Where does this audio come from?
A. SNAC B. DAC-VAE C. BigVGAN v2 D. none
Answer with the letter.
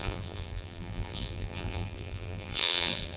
C